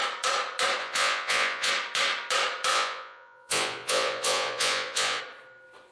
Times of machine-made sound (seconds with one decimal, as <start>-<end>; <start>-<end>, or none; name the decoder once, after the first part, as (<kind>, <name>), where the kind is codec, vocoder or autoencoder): 0.8-1.7 (vocoder, Vocos); 2.7-5.2